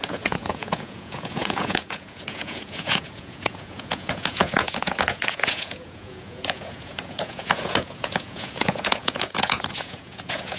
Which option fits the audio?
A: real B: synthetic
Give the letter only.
B